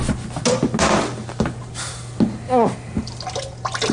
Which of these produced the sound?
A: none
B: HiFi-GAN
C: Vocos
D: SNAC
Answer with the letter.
A